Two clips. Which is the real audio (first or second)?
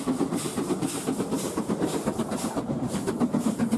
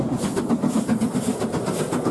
second